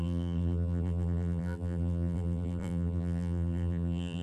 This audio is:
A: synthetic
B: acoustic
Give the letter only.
A